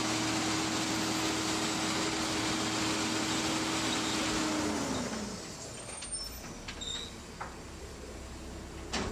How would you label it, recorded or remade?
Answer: recorded